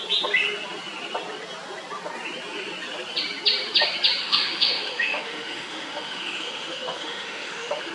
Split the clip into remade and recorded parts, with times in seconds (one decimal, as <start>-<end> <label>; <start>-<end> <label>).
0.0-4.2 recorded; 4.2-7.9 remade